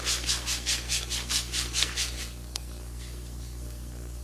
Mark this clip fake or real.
fake